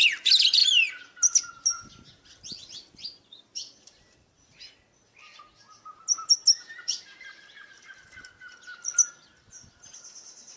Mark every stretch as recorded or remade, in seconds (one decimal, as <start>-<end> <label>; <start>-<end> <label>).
0.0-10.6 recorded